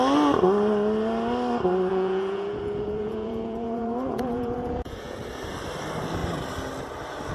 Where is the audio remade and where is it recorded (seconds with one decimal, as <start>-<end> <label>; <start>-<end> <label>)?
0.0-1.9 recorded; 1.9-5.2 remade; 5.2-7.3 recorded